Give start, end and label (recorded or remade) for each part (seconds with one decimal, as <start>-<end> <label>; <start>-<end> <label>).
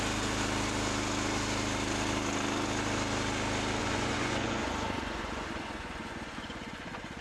0.0-3.8 recorded; 3.8-7.2 remade